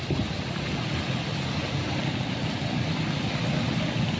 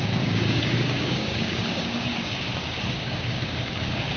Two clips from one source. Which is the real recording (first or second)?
first